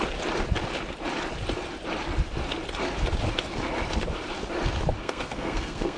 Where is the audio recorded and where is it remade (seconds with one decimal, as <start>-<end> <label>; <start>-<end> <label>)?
0.0-5.0 recorded; 5.0-6.0 remade